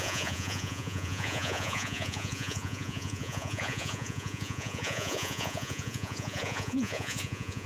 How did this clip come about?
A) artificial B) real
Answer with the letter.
A